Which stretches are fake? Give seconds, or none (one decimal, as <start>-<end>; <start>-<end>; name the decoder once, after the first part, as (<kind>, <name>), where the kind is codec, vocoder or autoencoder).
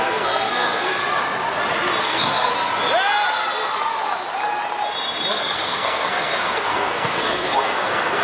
0.0-1.0 (codec, SNAC); 2.0-2.5; 5.3-8.2